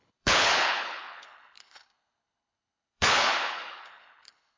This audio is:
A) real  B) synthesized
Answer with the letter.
B